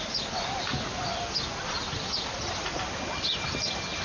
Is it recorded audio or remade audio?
recorded